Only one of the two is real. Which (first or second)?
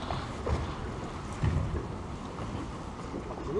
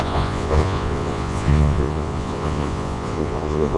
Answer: first